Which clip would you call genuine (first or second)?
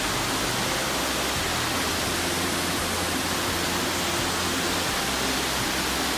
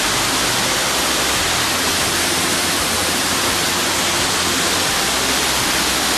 first